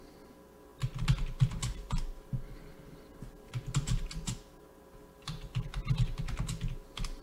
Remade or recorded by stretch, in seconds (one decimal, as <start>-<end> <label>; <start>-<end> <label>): 0.0-7.2 recorded